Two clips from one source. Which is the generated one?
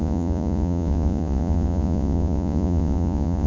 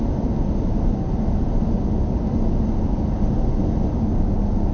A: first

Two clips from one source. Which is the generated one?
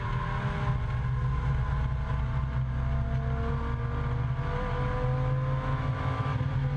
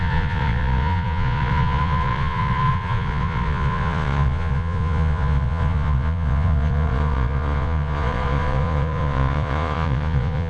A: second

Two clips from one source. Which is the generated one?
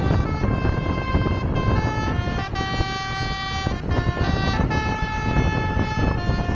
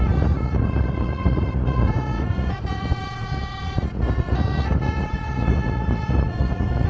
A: second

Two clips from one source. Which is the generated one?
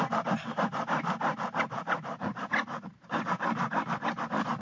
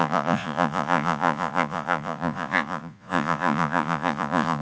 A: second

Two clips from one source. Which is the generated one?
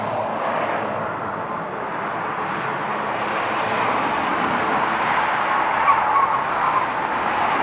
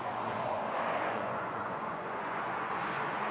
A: second